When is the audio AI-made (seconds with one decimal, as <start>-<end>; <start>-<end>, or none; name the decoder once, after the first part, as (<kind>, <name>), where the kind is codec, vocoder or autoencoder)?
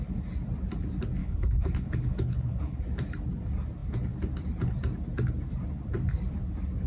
1.2-2.8 (codec, HILCodec)